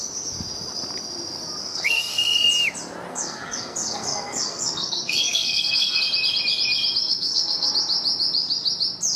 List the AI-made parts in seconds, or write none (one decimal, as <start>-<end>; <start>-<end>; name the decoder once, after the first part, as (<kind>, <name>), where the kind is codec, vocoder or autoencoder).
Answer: 1.6-2.5 (codec, SNAC); 3.1-6.0; 7.0-7.7